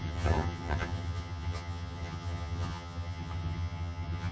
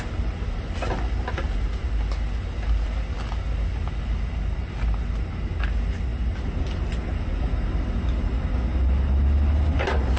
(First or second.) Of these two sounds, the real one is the second